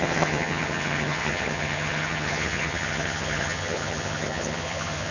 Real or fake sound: fake